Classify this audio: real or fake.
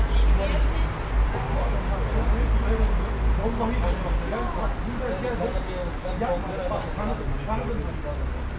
real